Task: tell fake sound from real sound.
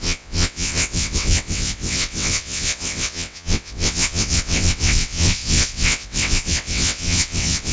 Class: fake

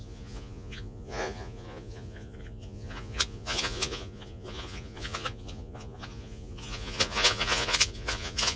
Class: fake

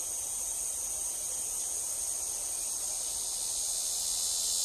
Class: real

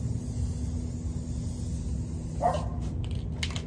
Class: real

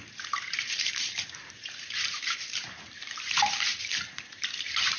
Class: fake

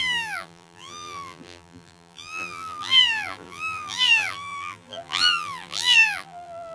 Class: fake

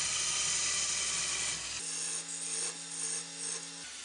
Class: real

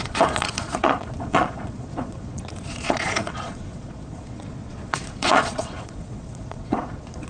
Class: fake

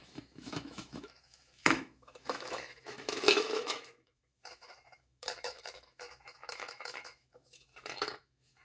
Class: fake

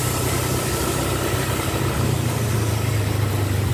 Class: real